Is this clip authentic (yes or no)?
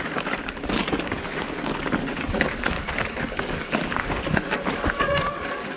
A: no